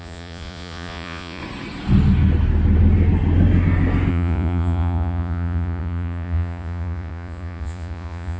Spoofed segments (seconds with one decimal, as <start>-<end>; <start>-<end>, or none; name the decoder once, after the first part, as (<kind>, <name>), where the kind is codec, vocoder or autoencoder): 0.0-1.4 (vocoder, Vocos); 4.1-8.4